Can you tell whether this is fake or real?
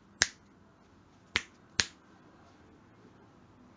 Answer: real